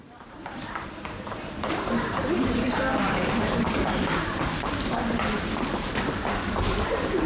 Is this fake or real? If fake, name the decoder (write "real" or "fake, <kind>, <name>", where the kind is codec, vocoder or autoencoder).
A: fake, vocoder, BigVGAN v2